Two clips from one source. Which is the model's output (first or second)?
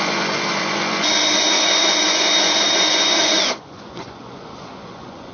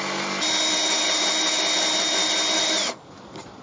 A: first